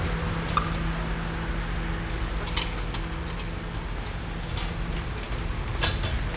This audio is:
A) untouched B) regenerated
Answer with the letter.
A